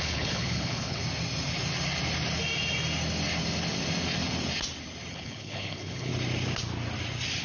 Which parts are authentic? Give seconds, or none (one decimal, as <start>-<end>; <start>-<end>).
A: 1.0-5.1; 6.1-7.4